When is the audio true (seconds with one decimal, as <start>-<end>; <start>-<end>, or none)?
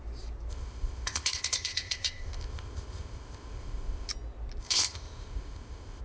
0.0-0.5; 4.1-4.6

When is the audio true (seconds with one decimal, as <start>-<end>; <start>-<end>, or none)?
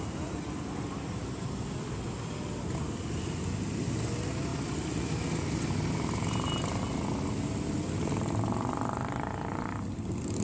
0.0-10.4